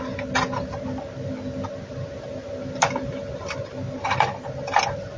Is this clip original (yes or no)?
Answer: yes